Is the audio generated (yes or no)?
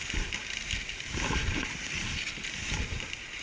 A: no